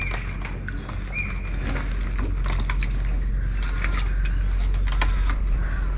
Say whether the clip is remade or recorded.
recorded